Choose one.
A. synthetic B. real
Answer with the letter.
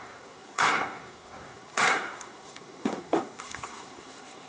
A